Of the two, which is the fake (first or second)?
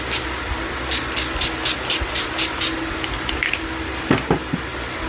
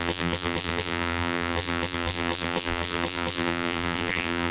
second